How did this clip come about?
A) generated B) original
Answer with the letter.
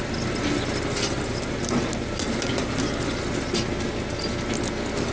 B